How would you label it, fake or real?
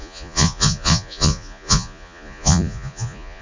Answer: fake